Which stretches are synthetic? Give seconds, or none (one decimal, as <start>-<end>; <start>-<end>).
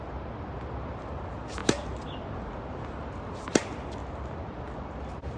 none